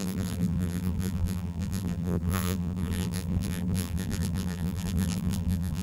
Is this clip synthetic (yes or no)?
yes